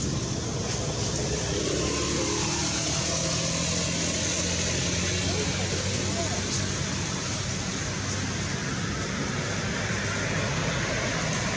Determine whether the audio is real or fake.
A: real